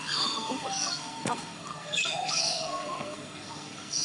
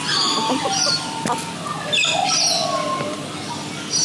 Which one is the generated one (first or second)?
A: first